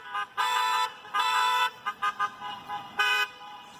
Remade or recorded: remade